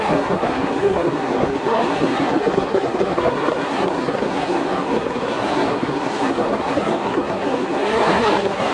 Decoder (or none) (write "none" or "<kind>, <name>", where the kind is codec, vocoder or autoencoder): codec, SNAC